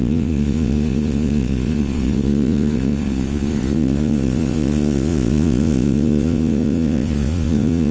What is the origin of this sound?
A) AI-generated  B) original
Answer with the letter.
A